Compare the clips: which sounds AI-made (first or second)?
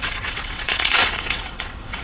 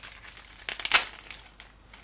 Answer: first